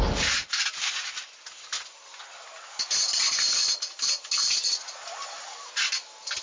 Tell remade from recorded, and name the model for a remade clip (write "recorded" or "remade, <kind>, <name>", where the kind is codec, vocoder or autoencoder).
recorded